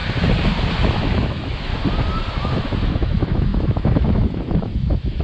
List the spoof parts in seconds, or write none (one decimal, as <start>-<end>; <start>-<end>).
0.8-1.7; 2.9-5.2